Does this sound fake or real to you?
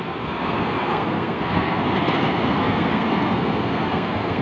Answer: fake